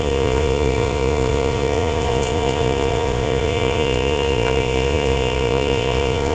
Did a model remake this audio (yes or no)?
yes